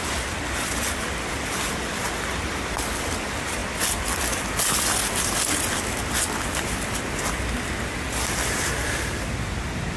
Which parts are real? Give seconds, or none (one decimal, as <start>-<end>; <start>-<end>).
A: 0.0-10.0